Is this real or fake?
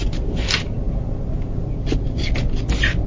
real